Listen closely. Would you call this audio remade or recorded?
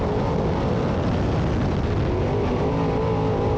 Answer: recorded